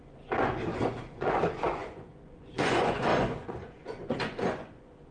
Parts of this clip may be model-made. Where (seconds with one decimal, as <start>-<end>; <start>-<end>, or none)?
0.0-5.1